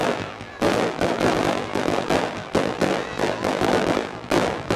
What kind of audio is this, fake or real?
fake